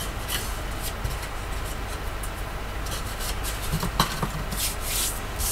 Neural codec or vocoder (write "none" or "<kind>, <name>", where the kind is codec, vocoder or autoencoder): none